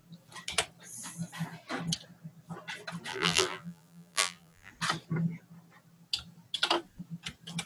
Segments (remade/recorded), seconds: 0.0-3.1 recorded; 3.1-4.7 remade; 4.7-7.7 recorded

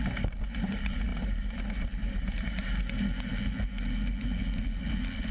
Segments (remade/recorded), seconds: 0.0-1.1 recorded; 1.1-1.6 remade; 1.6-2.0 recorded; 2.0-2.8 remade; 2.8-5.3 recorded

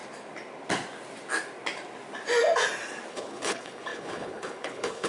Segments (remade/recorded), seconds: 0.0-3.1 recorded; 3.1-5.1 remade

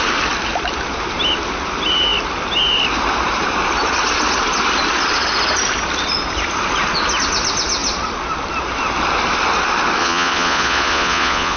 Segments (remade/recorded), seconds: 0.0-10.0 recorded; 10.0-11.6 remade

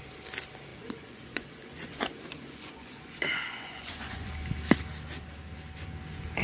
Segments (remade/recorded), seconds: 0.0-0.7 recorded; 0.7-4.3 remade; 4.3-6.4 recorded

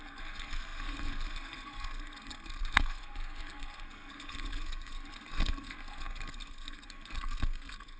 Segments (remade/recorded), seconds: 0.0-8.0 remade

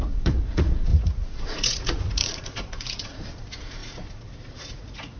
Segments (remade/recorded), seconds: 0.0-5.2 remade

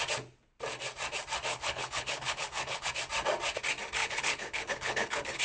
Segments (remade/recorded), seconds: 0.0-1.5 recorded; 1.5-2.9 remade; 2.9-4.0 recorded; 4.0-5.4 remade